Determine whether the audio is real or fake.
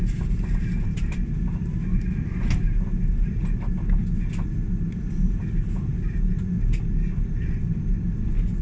real